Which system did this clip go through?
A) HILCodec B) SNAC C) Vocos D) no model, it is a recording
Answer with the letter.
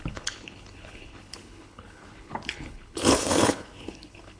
A